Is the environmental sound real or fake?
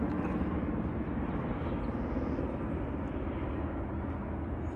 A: real